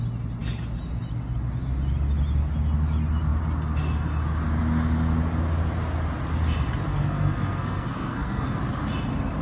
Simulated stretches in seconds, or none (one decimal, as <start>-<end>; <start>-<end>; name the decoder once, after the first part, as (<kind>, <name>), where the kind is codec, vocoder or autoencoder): 6.9-8.6 (codec, SNAC)